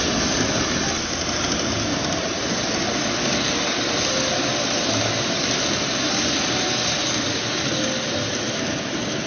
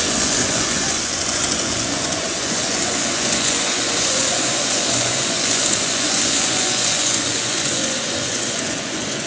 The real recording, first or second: first